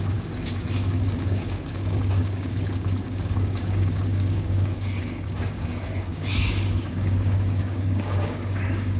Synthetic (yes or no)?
yes